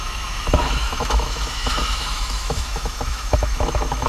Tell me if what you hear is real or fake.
fake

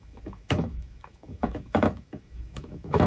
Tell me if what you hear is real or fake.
fake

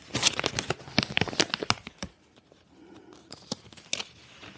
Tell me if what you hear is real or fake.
real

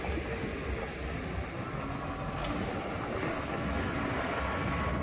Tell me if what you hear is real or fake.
real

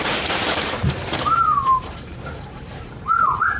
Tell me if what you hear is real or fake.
fake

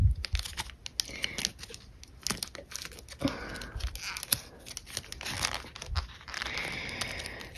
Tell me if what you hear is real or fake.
real